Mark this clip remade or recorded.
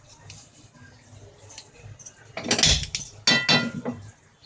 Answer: recorded